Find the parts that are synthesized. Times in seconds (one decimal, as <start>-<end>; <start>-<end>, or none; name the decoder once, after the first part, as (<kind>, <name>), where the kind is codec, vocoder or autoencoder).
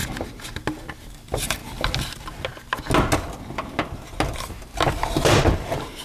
1.1-1.6 (vocoder, BigVGAN v2); 4.9-6.0